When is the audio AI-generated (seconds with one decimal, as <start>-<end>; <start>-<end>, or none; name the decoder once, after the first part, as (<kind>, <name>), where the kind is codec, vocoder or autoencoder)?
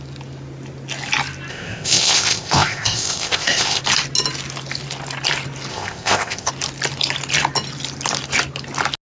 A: 1.5-3.8 (codec, ZipCodec); 5.7-6.5